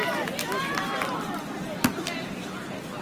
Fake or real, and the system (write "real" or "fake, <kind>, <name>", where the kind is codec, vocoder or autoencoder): real